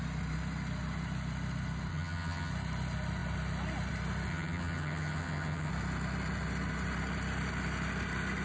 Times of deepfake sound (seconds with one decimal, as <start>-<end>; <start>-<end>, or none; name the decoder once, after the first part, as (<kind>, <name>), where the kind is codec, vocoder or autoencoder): 1.9-2.5 (vocoder, HiFi-GAN); 4.3-5.7